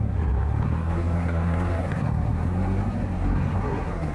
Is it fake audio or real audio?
fake